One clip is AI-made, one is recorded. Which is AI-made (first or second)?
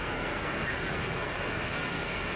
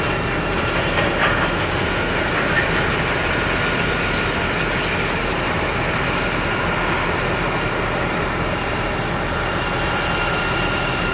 first